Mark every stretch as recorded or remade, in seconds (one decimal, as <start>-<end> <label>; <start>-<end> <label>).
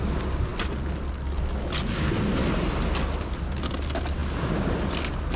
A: 0.0-5.4 recorded